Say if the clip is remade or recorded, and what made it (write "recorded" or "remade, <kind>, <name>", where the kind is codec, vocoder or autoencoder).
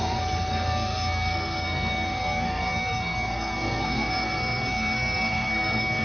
remade, codec, SNAC